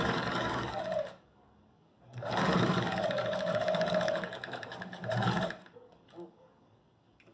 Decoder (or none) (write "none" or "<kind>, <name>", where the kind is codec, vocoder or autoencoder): codec, DAC